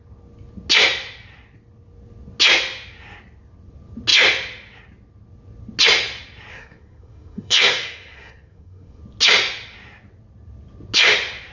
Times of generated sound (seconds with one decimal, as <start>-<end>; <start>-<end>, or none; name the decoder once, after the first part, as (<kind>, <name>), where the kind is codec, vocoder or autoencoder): 6.5-9.0 (codec, SNAC)